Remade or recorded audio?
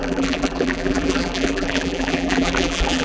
remade